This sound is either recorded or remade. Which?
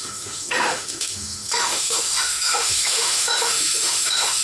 remade